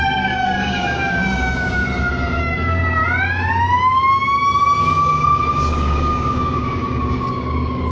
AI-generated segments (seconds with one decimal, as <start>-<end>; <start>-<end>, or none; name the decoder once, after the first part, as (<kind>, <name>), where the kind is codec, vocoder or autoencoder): 0.0-1.8 (codec, DAC); 2.4-3.0; 3.8-7.9